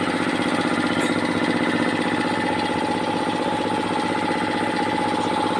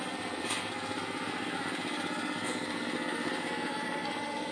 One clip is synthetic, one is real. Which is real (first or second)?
first